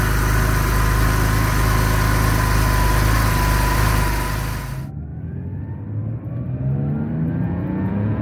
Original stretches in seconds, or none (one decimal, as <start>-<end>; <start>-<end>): 0.0-5.1; 5.8-7.3